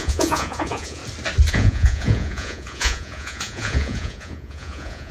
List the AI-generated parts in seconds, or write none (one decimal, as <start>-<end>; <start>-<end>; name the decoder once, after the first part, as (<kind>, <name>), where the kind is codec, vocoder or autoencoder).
0.0-1.0 (vocoder, Vocos); 1.5-5.1

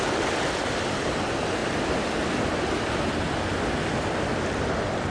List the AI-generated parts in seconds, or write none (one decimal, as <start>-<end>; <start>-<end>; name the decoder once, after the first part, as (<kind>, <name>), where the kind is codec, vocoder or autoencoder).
none

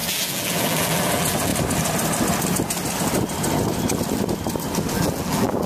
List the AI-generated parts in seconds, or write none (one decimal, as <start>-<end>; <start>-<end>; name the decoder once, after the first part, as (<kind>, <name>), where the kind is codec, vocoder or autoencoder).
0.0-1.5 (vocoder, BigVGAN v2); 4.9-5.7

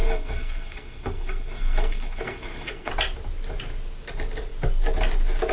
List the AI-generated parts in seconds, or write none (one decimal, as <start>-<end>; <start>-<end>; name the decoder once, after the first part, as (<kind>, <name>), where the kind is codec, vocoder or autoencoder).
0.0-2.9 (codec, SNAC)